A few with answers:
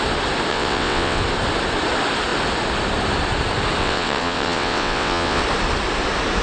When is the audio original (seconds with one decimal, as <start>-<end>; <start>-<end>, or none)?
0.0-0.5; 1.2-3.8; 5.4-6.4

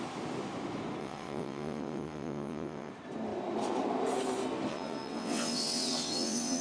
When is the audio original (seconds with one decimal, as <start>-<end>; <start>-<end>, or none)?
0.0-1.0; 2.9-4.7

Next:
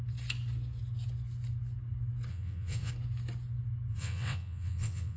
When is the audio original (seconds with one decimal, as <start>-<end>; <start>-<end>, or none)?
0.0-2.3; 2.9-3.9